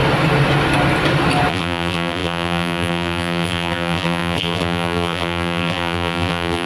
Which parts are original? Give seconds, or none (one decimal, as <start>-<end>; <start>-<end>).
0.0-1.5